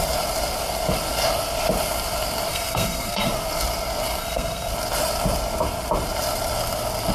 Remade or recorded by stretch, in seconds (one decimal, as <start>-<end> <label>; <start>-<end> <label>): 0.0-2.5 recorded; 2.5-3.3 remade; 3.3-4.2 recorded; 4.2-4.7 remade; 4.7-7.1 recorded